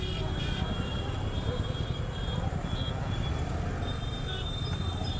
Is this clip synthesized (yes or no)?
no